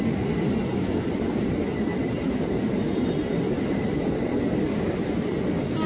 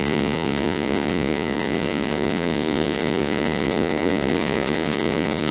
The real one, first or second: first